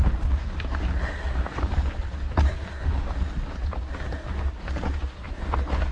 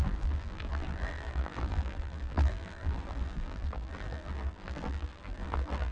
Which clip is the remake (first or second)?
second